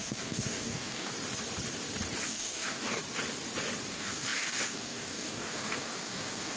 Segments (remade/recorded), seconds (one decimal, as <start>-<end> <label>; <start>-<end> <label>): 0.0-1.1 remade; 1.1-2.2 recorded; 2.2-3.0 remade; 3.0-3.9 recorded; 3.9-6.6 remade